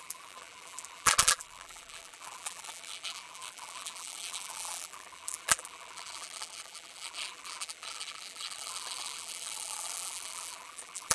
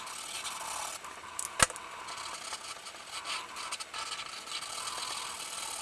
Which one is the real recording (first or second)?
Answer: second